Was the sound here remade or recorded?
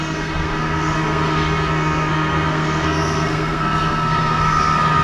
remade